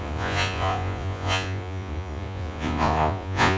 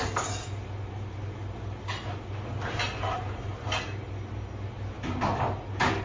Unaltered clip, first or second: second